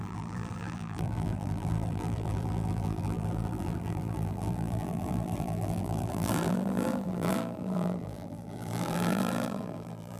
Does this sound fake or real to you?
fake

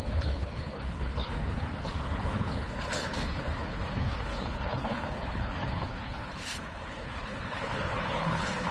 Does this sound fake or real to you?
fake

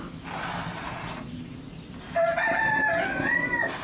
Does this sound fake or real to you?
real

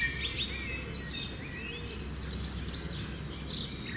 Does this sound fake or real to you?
real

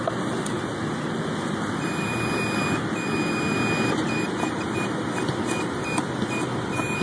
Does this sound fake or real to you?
real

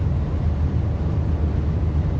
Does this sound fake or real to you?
real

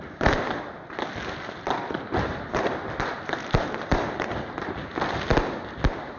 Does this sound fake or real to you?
real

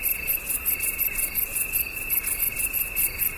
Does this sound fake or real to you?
real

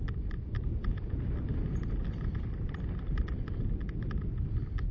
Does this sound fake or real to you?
real